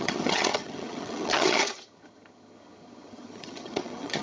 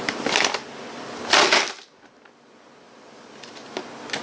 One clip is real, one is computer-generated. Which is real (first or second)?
second